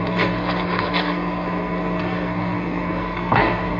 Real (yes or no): no